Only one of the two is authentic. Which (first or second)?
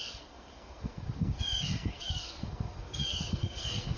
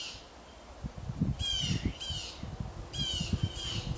second